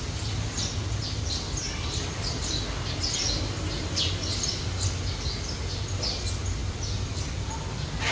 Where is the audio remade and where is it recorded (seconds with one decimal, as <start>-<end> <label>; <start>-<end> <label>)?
0.0-8.1 recorded